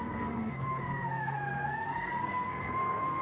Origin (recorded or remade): remade